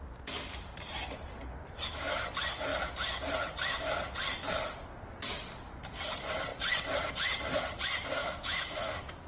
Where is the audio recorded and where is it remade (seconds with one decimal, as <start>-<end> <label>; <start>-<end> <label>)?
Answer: 0.0-8.2 recorded; 8.2-9.3 remade